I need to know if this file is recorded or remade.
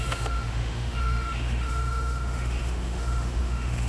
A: remade